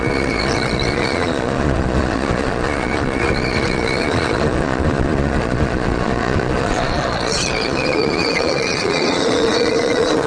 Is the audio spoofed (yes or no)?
yes